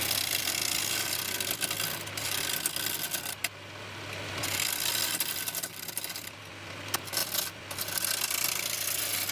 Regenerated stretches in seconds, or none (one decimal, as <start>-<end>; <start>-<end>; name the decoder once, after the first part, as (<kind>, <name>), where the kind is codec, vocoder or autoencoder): none